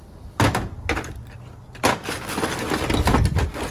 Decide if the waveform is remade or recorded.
recorded